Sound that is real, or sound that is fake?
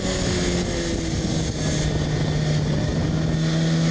real